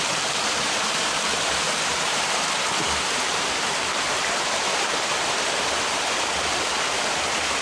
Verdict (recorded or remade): recorded